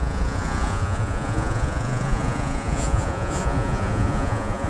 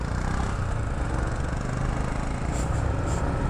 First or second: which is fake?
first